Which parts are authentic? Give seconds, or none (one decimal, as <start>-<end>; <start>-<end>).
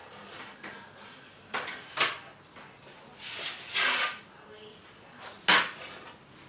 0.0-6.5